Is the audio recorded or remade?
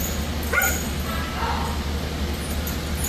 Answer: recorded